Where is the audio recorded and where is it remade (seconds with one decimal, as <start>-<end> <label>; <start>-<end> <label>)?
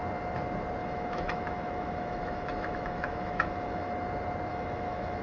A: 0.0-0.8 recorded; 0.8-3.9 remade; 3.9-4.5 recorded; 4.5-5.2 remade